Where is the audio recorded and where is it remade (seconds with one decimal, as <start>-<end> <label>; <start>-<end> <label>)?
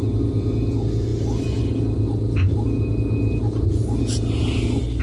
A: 0.0-1.1 recorded; 1.1-1.6 remade; 1.6-5.0 recorded